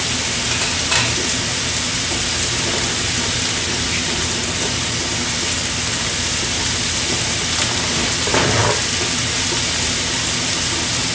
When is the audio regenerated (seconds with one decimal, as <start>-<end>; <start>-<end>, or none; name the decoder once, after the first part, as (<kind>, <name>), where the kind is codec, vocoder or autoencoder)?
none